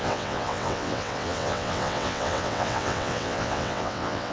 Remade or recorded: remade